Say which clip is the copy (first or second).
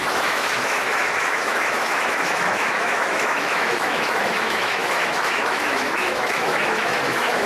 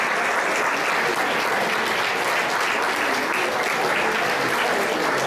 first